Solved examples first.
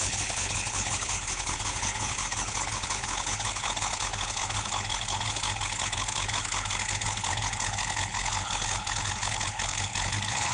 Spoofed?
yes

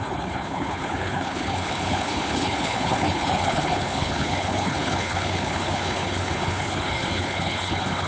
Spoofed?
yes